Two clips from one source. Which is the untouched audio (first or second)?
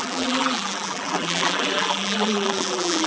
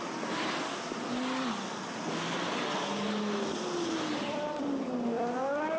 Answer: second